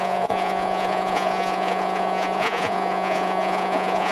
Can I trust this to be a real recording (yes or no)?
no